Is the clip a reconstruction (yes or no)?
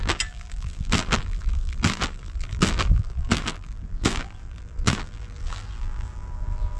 yes